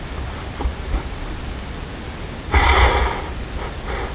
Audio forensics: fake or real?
real